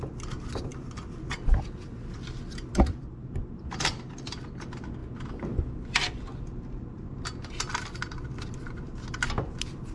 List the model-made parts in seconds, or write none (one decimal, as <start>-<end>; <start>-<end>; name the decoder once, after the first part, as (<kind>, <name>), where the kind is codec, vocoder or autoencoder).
none